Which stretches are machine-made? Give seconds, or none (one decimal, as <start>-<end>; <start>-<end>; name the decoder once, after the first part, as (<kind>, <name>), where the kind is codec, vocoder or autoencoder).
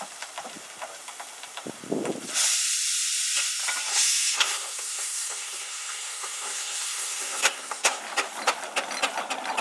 3.9-8.0 (codec, SNAC)